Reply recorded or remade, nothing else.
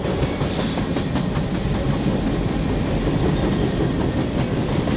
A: recorded